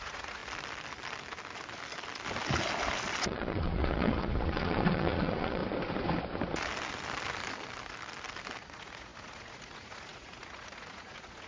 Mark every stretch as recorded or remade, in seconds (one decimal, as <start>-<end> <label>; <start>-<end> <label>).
0.0-0.4 remade; 0.4-3.2 recorded; 3.2-5.6 remade; 5.6-8.6 recorded; 8.6-11.5 remade

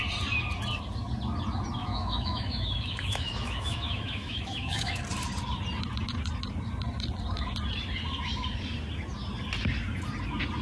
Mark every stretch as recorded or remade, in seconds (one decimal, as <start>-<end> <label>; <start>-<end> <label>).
0.0-1.8 recorded; 1.8-5.0 remade; 5.0-10.6 recorded

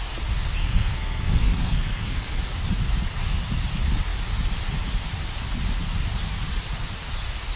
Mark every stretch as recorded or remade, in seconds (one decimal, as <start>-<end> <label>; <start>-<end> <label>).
0.0-0.6 recorded; 0.6-2.4 remade; 2.4-7.6 recorded

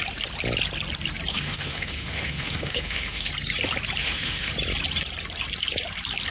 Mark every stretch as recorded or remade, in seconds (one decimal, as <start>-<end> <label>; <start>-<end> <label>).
0.0-1.3 recorded; 1.3-3.3 remade; 3.3-4.0 recorded; 4.0-4.5 remade; 4.5-6.3 recorded

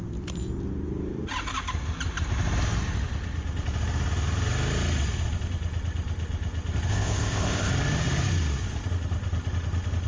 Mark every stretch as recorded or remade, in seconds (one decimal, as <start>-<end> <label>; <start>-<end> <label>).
0.0-6.9 recorded; 6.9-7.7 remade; 7.7-10.1 recorded

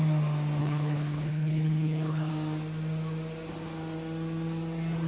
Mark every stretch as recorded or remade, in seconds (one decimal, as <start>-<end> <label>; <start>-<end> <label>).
0.0-0.6 recorded; 0.6-2.3 remade; 2.3-5.1 recorded

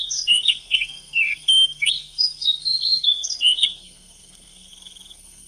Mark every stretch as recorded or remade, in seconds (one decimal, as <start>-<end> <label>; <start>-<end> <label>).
0.0-5.5 remade